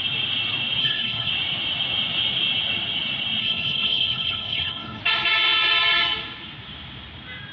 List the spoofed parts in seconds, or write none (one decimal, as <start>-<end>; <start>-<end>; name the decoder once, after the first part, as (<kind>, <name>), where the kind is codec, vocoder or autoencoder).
0.8-1.3 (codec, HILCodec); 3.4-5.0